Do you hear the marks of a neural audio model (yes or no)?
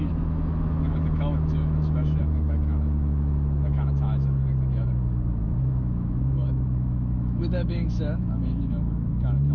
yes